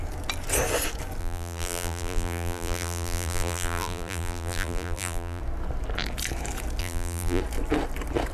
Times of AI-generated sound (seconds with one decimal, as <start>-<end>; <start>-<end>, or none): 1.2-5.4; 6.8-7.4